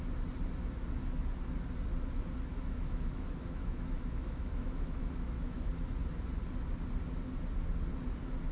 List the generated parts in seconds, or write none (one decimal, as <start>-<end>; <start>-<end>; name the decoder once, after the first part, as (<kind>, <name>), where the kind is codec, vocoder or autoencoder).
2.5-5.7 (autoencoder, DAC-VAE)